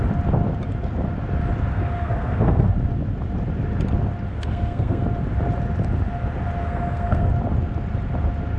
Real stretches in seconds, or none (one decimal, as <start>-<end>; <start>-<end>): 0.0-1.7; 2.7-4.3; 5.0-6.6; 7.3-8.6